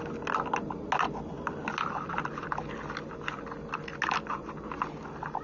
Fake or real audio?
real